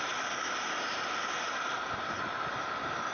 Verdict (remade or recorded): recorded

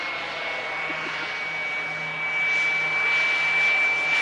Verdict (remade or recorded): recorded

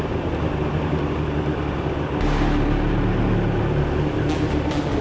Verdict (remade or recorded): recorded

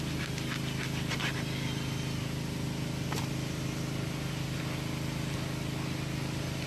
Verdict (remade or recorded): recorded